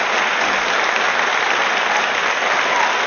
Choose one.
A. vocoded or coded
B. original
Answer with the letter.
B